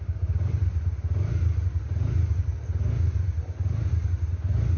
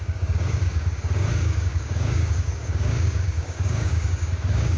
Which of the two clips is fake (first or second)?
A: second